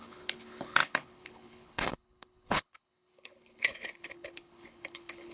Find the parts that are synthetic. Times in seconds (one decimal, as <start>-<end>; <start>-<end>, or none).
0.0-5.3